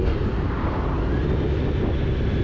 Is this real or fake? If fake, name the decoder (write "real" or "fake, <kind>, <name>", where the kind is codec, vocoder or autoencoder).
real